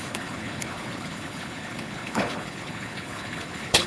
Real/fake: fake